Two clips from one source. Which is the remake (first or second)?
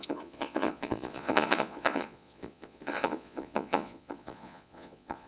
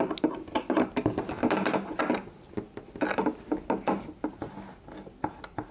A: first